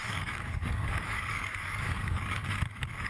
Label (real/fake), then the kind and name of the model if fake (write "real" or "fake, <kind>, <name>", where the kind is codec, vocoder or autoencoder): fake, codec, DAC